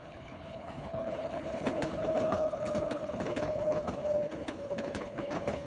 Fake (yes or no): yes